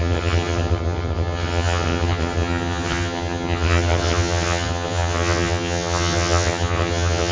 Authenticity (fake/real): fake